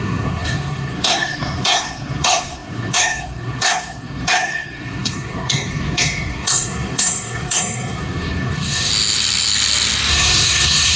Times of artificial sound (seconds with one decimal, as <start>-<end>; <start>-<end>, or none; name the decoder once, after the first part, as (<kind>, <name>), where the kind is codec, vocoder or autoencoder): 0.0-8.9 (codec, SNAC); 10.1-11.0